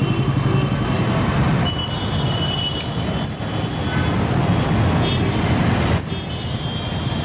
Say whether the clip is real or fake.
real